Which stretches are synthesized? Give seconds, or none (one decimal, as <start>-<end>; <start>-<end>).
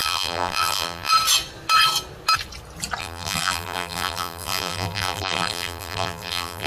0.0-1.1; 3.0-6.7